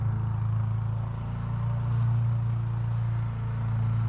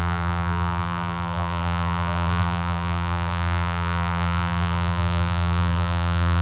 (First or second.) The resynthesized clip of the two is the second